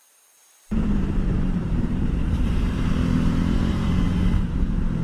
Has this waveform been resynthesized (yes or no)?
yes